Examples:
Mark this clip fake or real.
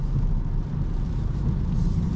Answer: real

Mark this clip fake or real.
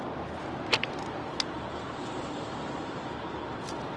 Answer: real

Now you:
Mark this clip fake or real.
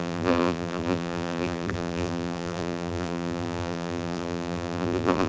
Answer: fake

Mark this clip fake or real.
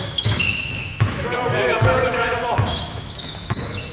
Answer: fake